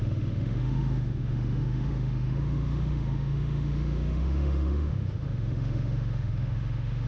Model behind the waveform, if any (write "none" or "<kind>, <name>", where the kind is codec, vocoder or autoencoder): autoencoder, DAC-VAE